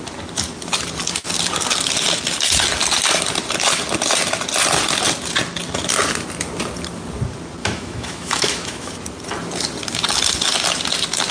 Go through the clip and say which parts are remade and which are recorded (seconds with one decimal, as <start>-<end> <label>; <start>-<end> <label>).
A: 0.0-7.6 recorded; 7.6-8.9 remade; 8.9-11.3 recorded

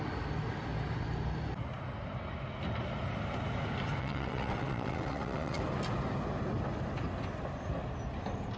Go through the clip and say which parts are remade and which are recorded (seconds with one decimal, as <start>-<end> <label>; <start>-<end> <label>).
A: 0.0-4.0 recorded; 4.0-5.6 remade; 5.6-8.6 recorded